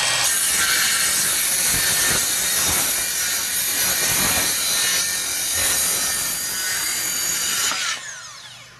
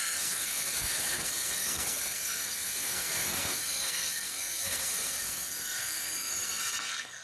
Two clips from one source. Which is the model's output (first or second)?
second